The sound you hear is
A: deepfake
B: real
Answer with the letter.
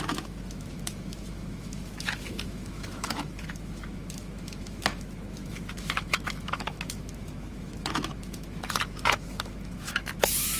A